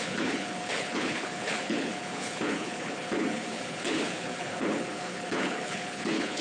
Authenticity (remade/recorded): remade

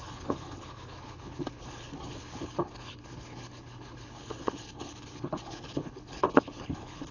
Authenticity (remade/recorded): remade